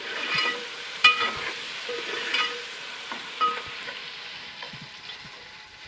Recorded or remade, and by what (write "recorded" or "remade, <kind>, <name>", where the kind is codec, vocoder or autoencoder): remade, vocoder, BigVGAN v2